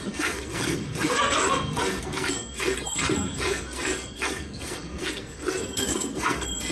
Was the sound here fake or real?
fake